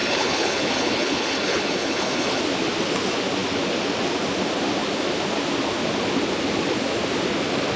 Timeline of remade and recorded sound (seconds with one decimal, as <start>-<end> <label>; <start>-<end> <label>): 0.0-2.4 remade; 2.4-7.8 recorded

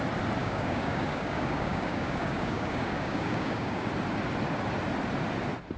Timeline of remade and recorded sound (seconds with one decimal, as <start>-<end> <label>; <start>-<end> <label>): 0.0-0.4 recorded; 0.4-3.9 remade; 3.9-5.8 recorded